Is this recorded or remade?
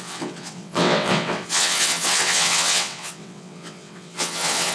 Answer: remade